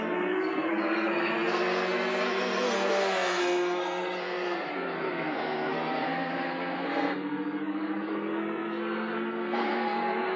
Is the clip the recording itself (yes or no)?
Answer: no